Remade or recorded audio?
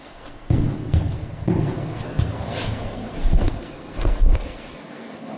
remade